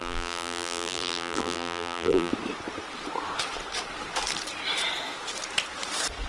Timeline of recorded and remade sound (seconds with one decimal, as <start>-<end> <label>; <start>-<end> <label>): 0.0-2.3 remade; 2.3-6.3 recorded